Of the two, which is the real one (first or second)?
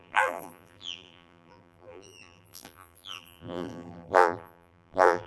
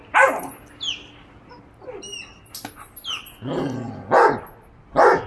second